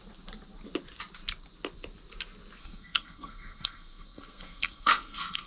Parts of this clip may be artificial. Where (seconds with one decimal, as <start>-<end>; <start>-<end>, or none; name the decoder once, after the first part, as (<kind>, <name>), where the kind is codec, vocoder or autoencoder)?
2.6-5.5 (codec, SNAC)